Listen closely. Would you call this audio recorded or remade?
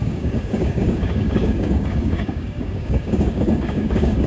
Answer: remade